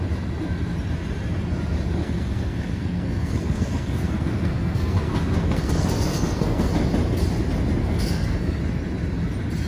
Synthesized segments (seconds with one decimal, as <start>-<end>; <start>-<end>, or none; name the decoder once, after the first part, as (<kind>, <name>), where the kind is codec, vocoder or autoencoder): 2.0-6.7 (codec, SNAC); 7.8-8.6